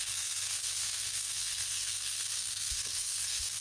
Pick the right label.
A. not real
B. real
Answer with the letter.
A